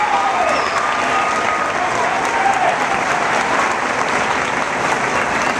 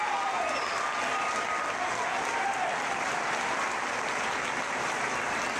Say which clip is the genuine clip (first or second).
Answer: second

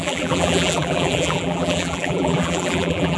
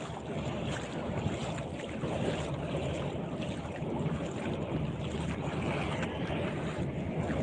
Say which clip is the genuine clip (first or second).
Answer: second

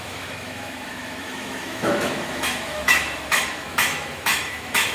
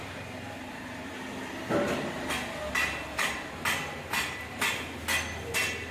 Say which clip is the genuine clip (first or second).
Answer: second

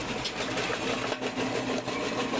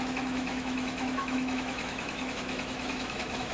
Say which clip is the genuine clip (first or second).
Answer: first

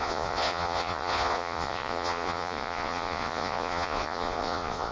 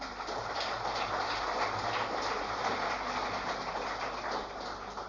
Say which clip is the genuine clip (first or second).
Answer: second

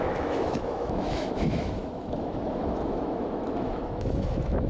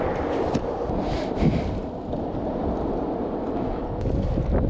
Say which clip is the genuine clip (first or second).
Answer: second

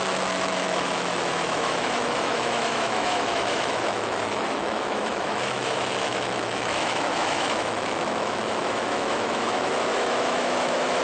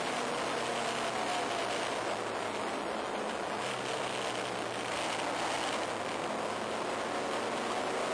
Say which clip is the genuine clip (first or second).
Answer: second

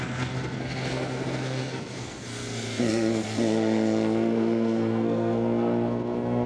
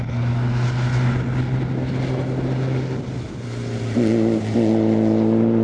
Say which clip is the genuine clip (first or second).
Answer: second